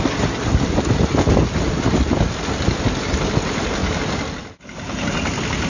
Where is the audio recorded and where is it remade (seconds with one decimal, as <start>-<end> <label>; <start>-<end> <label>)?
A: 0.0-5.7 recorded